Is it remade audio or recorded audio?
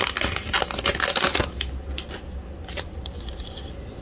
recorded